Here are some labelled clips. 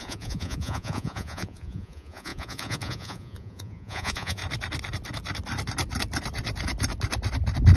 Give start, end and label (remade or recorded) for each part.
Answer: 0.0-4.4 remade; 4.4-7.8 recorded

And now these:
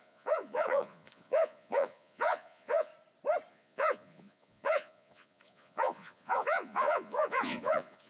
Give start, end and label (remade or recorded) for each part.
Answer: 0.0-2.9 remade; 2.9-3.5 recorded; 3.5-8.1 remade

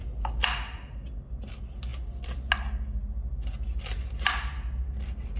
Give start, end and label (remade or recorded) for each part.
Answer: 0.0-5.4 recorded

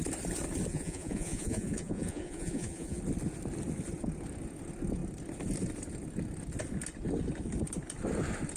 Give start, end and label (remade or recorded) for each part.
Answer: 0.0-0.7 recorded; 0.7-3.0 remade; 3.0-8.6 recorded